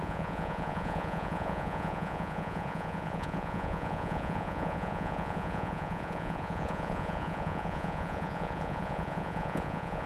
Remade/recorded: remade